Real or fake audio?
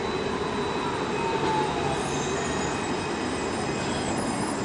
real